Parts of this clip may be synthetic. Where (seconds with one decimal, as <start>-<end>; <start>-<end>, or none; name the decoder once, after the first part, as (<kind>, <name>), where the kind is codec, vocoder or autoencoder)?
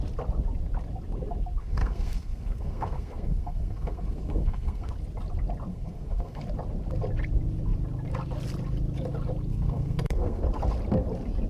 1.6-4.9 (codec, SNAC); 5.7-6.4; 9.5-10.4